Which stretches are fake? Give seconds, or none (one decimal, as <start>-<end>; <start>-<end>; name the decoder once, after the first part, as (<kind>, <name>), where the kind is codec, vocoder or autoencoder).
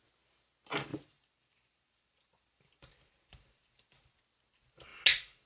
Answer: 0.9-4.2 (vocoder, BigVGAN v2)